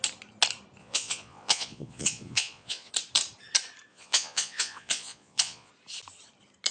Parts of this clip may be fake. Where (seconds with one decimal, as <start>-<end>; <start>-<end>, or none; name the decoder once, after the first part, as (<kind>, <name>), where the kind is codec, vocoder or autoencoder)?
0.8-2.9 (vocoder, Vocos); 3.9-5.7